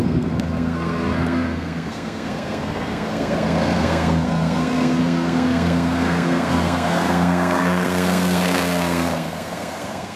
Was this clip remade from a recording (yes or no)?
yes